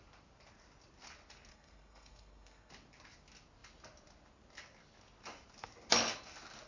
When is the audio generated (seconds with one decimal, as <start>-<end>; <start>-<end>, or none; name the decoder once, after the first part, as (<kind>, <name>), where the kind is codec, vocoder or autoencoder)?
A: 1.5-2.7 (codec, SNAC)